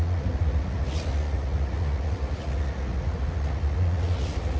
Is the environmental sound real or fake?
fake